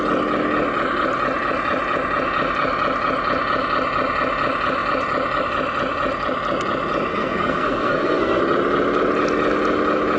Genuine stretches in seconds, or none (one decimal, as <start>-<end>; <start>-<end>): 0.0-7.1; 8.4-10.2